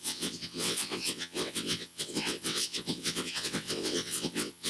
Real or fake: fake